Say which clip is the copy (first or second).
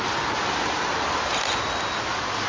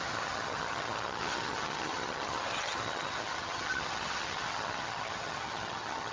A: second